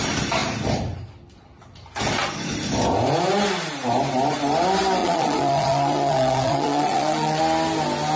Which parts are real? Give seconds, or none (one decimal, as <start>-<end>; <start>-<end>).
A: 0.0-5.0; 7.4-8.2